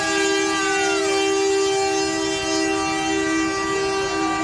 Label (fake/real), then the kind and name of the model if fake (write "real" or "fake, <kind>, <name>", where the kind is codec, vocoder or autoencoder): real